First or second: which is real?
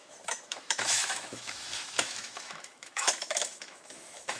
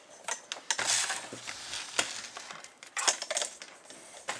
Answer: second